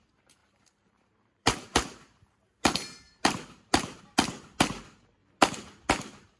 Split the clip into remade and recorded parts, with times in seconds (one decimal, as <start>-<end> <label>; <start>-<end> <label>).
0.0-0.4 recorded; 0.4-4.0 remade; 4.0-6.4 recorded